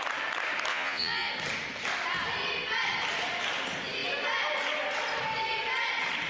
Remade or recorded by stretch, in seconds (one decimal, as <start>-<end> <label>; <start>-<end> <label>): 0.0-0.7 recorded; 0.7-1.3 remade; 1.3-6.3 recorded